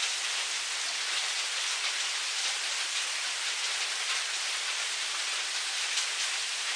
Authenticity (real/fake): real